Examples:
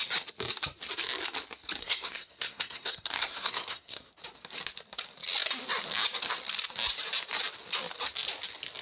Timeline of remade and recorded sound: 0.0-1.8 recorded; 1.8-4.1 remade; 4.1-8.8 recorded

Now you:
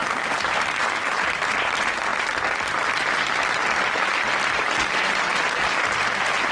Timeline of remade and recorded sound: 0.0-1.5 remade; 1.5-6.5 recorded

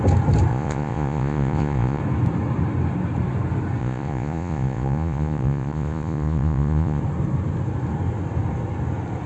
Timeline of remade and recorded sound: 0.0-0.5 recorded; 0.5-2.0 remade; 2.0-3.8 recorded; 3.8-7.0 remade; 7.0-9.3 recorded

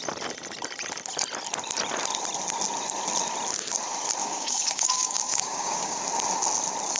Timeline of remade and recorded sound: 0.0-4.2 recorded; 4.2-6.0 remade; 6.0-7.0 recorded

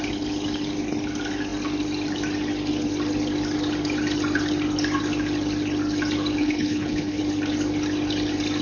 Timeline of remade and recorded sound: 0.0-6.4 recorded; 6.4-7.2 remade; 7.2-8.6 recorded

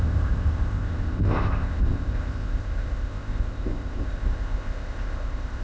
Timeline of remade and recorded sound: 0.0-5.6 remade